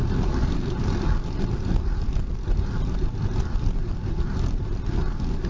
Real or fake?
real